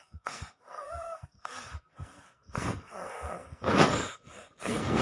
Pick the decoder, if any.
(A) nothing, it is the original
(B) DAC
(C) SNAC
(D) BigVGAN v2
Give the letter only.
C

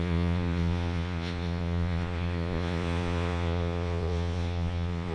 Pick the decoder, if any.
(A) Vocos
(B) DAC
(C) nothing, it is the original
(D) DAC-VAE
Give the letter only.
A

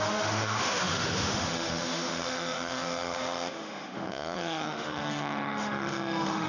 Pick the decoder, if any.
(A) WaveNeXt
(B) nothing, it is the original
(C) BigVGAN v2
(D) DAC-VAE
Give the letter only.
D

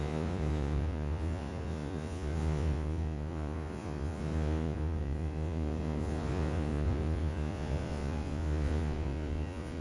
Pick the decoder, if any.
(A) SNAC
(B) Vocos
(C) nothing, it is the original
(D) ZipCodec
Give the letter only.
B